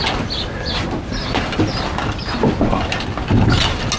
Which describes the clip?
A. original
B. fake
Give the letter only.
A